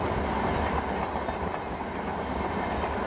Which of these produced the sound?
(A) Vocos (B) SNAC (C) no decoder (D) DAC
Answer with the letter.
C